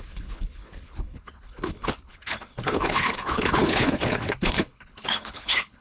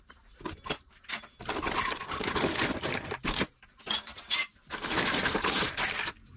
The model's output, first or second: first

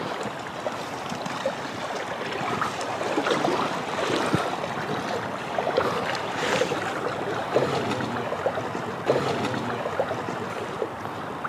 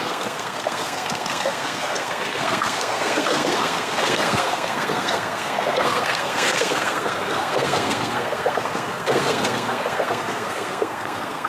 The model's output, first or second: second